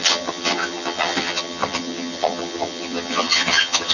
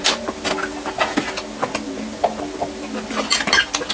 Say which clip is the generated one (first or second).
first